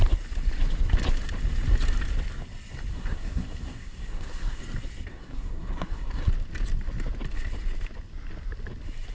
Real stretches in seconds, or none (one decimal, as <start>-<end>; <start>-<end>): 0.0-2.9; 4.6-5.1; 6.3-9.1